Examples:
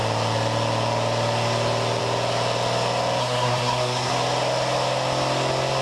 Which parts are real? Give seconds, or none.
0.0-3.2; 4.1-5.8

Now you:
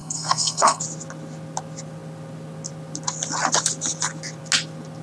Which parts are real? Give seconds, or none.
0.8-5.0

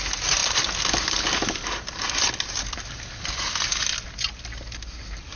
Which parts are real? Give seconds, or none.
0.0-5.4

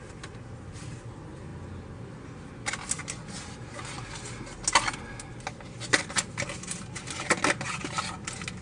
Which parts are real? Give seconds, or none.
0.0-8.6